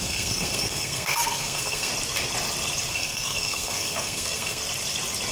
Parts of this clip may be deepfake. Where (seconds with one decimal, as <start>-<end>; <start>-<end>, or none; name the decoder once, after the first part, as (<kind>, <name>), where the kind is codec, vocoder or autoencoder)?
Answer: 0.0-1.9 (codec, SNAC); 2.9-4.6